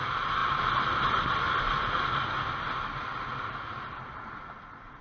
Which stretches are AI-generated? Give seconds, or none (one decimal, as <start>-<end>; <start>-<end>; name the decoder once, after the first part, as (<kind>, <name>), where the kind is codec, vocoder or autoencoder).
none